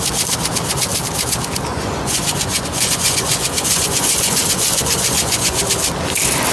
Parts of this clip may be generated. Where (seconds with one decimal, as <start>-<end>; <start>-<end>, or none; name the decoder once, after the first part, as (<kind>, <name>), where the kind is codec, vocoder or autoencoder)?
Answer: 1.7-5.6 (vocoder, Vocos)